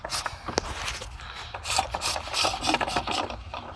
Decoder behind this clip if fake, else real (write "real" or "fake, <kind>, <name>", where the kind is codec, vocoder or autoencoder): real